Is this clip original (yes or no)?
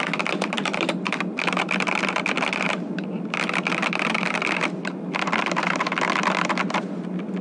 yes